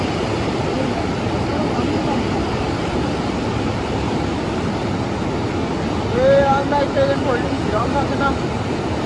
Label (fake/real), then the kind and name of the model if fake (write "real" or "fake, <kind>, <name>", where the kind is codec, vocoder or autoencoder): real